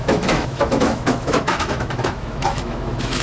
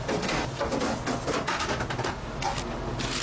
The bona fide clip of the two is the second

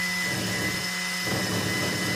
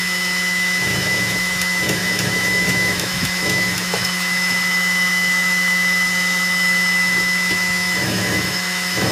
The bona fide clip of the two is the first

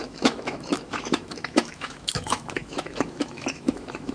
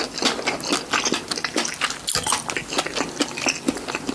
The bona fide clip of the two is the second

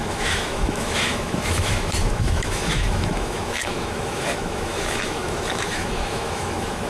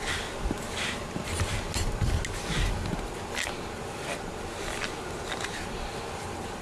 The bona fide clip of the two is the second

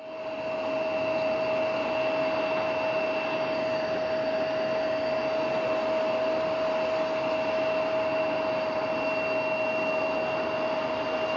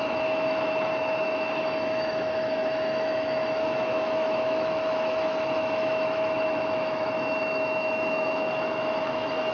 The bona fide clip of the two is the first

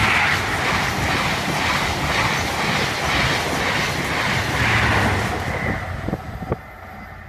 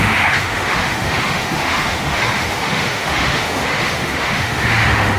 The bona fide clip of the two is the first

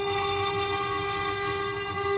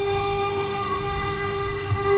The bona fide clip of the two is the first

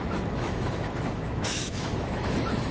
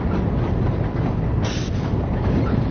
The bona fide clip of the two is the second